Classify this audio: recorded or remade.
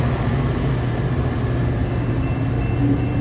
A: remade